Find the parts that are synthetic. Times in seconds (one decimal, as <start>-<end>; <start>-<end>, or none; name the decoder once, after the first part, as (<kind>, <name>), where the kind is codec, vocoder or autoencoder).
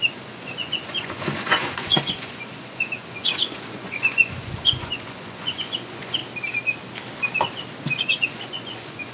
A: 0.0-6.2 (vocoder, Vocos); 7.8-9.1